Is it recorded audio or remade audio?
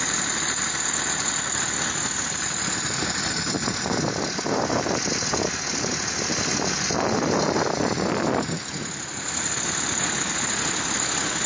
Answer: recorded